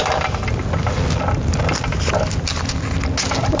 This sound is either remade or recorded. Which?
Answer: recorded